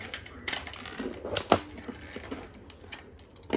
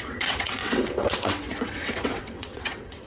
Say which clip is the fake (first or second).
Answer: second